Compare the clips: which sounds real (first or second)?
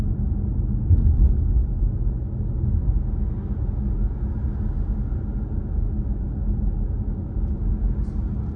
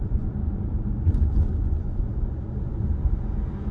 first